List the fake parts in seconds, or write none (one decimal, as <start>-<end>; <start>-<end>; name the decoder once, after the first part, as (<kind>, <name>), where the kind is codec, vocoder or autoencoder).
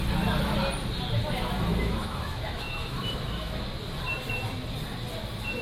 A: 1.7-3.5 (autoencoder, DAC-VAE)